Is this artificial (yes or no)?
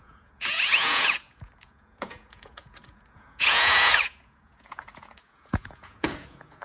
yes